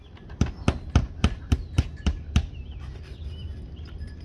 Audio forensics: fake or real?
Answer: real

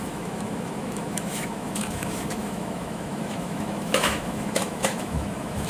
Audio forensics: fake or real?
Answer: fake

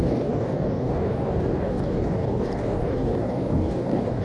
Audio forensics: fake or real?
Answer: fake